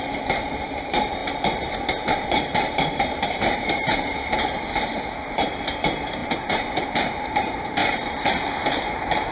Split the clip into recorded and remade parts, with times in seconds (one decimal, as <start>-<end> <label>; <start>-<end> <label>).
0.0-9.3 remade